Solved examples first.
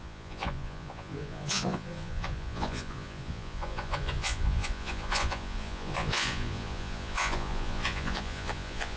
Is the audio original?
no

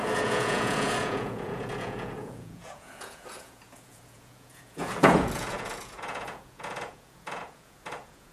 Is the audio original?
no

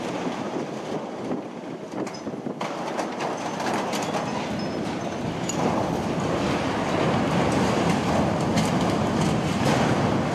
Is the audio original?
yes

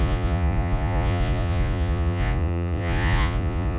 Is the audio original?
no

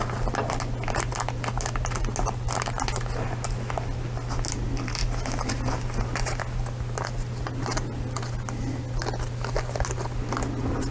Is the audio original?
yes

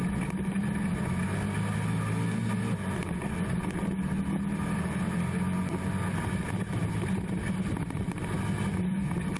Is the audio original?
yes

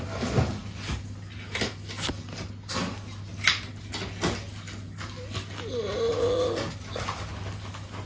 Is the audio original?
yes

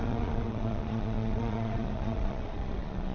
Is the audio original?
no